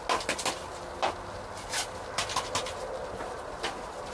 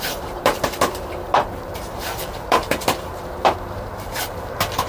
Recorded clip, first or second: first